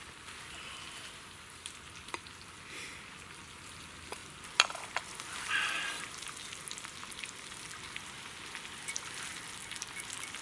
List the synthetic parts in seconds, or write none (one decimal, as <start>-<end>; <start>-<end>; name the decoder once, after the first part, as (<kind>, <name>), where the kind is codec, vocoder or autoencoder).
none